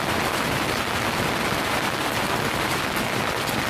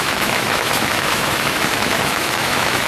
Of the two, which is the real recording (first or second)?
first